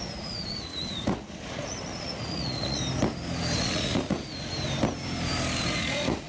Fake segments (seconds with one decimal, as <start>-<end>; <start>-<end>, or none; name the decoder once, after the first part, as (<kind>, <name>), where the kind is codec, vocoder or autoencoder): 0.0-2.8 (vocoder, Vocos); 3.6-4.2; 5.7-6.3